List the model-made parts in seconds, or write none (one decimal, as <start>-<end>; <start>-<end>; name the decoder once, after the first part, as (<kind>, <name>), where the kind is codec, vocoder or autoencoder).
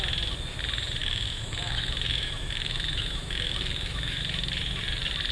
1.0-4.2 (autoencoder, DAC-VAE)